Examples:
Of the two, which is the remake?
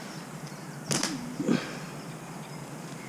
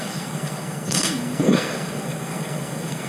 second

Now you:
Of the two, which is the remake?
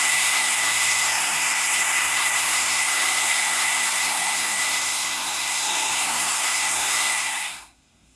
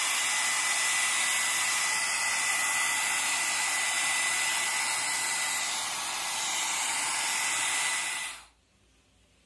first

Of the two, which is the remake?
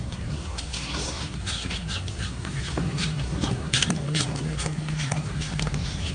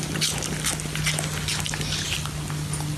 first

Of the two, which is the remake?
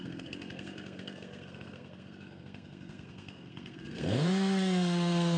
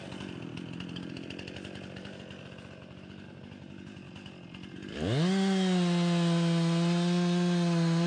first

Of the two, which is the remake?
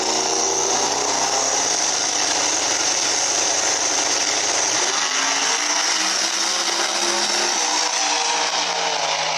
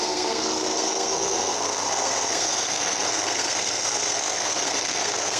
second